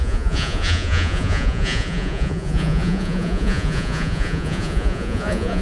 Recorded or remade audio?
remade